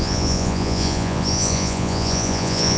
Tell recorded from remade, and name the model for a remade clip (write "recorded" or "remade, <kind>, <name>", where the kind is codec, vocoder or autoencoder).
remade, vocoder, Vocos